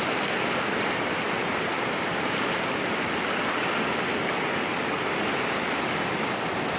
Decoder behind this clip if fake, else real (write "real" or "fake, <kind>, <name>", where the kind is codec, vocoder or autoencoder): real